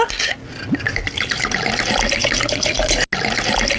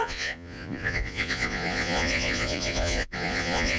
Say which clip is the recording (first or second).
first